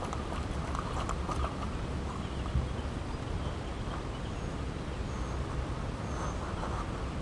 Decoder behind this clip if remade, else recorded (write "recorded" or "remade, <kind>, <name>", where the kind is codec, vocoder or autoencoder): recorded